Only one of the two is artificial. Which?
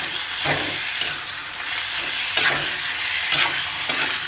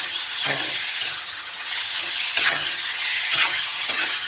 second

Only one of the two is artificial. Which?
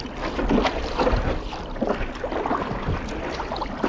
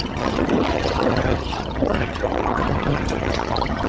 second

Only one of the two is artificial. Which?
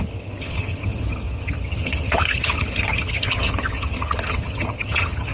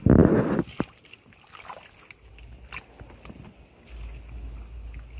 first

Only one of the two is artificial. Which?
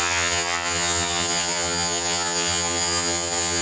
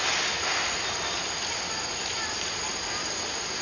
first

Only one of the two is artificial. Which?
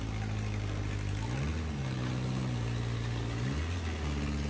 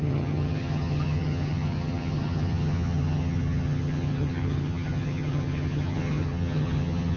second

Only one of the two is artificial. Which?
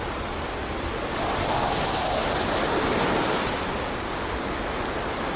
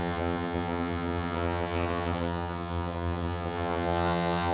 second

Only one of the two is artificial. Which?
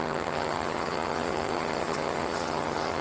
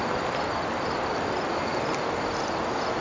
first